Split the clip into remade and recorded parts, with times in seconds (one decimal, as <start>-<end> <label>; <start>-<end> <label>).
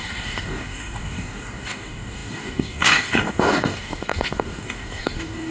0.0-5.5 remade